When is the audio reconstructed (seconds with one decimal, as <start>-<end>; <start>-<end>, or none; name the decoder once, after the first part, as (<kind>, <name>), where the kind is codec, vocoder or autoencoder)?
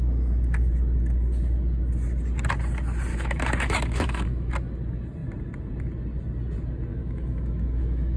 3.1-4.5 (autoencoder, DAC-VAE); 6.9-8.2